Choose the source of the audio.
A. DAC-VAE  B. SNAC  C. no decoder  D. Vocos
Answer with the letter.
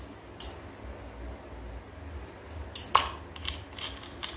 C